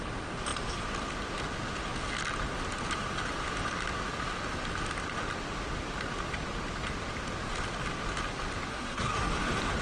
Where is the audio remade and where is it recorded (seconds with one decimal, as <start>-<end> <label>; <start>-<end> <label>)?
0.0-8.7 recorded; 8.7-9.3 remade; 9.3-9.8 recorded

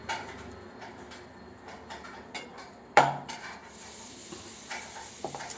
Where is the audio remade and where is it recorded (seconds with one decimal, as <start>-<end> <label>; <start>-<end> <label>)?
0.0-1.4 recorded; 1.4-4.2 remade; 4.2-5.6 recorded